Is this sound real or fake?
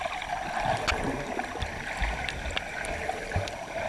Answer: real